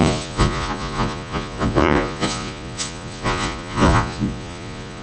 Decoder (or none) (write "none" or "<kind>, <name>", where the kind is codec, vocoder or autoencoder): vocoder, Vocos